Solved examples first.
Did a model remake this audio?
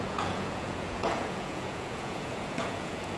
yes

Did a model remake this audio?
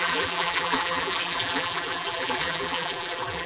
yes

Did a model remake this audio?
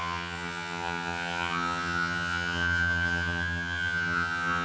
yes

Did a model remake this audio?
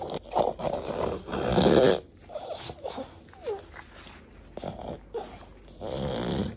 no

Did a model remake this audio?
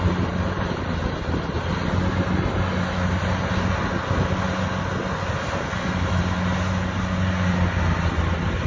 no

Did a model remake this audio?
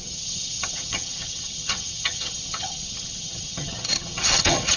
yes